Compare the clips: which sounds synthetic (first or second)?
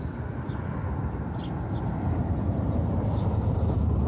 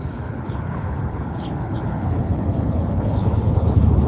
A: second